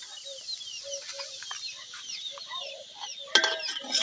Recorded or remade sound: recorded